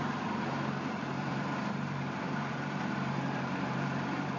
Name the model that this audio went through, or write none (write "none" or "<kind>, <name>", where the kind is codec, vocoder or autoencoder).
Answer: vocoder, BigVGAN v2